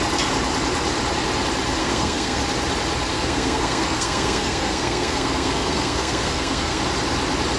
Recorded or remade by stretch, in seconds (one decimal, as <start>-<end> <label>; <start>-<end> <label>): 0.0-1.8 recorded; 1.8-2.4 remade; 2.4-3.1 recorded; 3.1-6.8 remade; 6.8-7.6 recorded